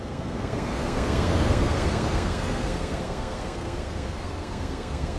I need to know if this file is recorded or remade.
remade